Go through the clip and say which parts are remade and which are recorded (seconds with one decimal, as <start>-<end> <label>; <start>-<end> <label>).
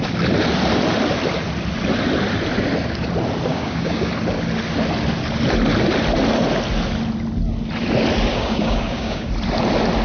0.0-3.5 recorded; 3.5-4.1 remade; 4.1-8.3 recorded; 8.3-9.3 remade; 9.3-10.0 recorded